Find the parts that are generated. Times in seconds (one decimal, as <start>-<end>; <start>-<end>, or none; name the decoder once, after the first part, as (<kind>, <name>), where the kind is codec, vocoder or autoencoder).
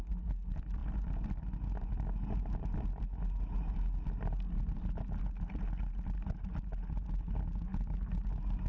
none